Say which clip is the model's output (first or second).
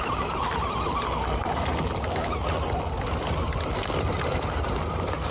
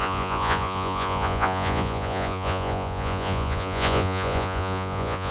second